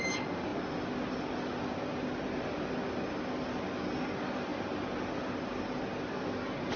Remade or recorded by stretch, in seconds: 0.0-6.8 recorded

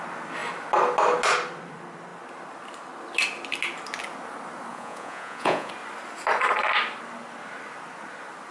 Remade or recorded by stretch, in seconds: 0.0-4.7 recorded; 4.7-5.7 remade; 5.7-8.5 recorded

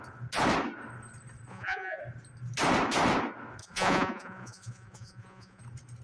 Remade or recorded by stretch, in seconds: 0.0-1.5 recorded; 1.5-2.0 remade; 2.0-3.6 recorded; 3.6-5.6 remade; 5.6-6.0 recorded

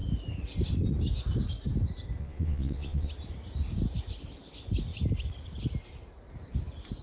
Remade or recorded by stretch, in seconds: 0.0-2.2 recorded; 2.2-3.1 remade; 3.1-7.0 recorded

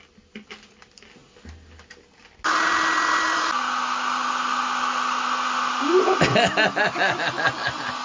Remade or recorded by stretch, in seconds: 0.0-8.0 recorded

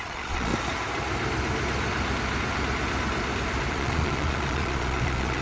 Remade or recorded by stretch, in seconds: 0.0-0.5 remade; 0.5-3.7 recorded; 3.7-5.4 remade

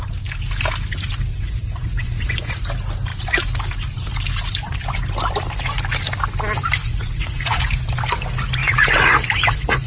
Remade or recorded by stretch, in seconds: 0.0-1.3 recorded; 1.3-2.5 remade; 2.5-6.8 recorded; 6.8-7.6 remade; 7.6-8.6 recorded; 8.6-9.9 remade

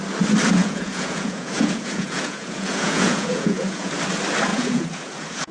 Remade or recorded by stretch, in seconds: 0.0-0.6 recorded; 0.6-3.9 remade; 3.9-4.5 recorded; 4.5-5.5 remade